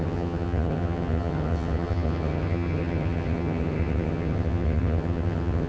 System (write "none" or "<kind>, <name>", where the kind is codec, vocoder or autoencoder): vocoder, HiFi-GAN